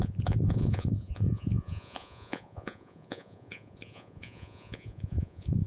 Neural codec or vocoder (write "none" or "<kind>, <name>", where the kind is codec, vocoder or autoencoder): vocoder, Vocos